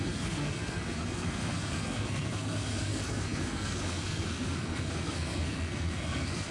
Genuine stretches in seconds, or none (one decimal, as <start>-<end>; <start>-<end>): none